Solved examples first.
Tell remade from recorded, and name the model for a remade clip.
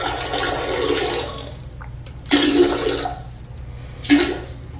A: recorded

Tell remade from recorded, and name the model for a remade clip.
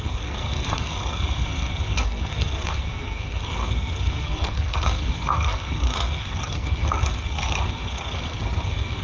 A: remade, codec, SNAC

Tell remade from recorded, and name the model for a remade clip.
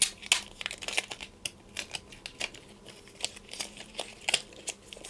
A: recorded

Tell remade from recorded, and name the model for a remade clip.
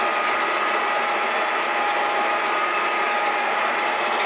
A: recorded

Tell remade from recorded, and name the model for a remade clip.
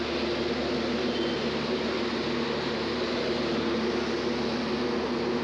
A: recorded